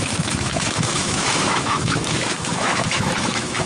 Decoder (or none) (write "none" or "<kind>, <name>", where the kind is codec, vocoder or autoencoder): autoencoder, DAC-VAE